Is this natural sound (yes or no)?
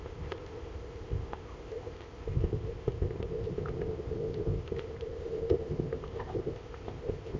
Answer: no